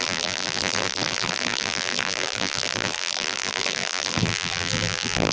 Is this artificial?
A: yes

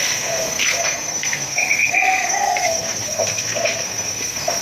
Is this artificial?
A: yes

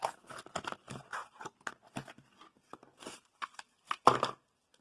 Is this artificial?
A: no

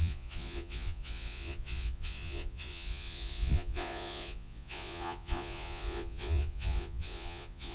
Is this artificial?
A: yes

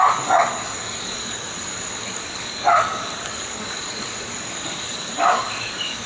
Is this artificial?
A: yes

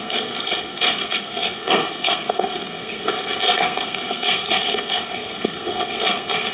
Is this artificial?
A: yes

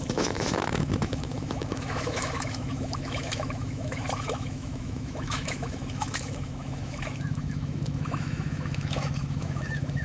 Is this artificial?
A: yes